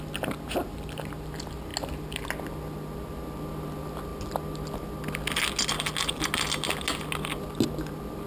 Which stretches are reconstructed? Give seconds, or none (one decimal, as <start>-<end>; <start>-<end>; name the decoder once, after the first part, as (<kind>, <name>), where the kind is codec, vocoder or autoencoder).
none